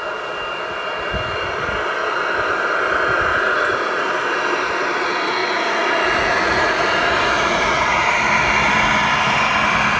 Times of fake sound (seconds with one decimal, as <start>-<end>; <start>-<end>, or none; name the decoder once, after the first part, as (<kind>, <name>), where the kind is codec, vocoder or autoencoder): 3.3-4.0 (vocoder, Vocos); 5.4-8.1